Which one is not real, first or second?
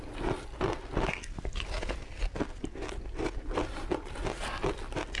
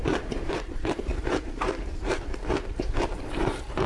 second